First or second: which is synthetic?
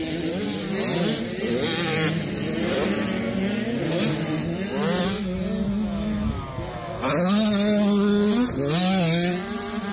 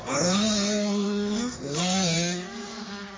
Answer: second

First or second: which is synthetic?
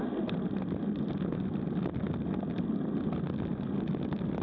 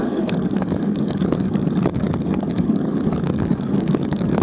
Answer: second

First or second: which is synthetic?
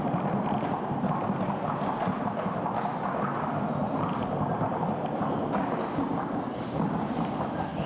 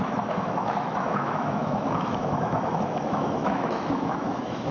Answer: second